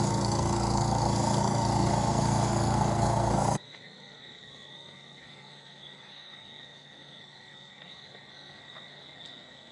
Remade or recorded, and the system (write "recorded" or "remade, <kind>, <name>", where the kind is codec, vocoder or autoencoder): remade, codec, SNAC